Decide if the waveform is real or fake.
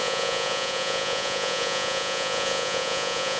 fake